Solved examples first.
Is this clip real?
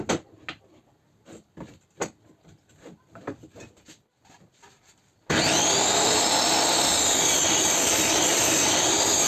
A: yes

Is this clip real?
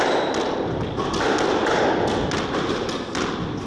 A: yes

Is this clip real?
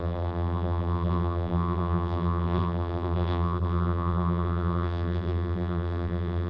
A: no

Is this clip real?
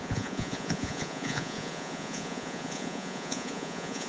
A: no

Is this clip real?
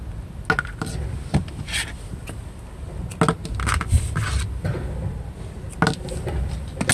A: yes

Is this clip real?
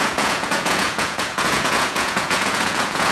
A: no